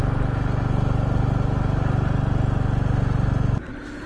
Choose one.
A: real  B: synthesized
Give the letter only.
A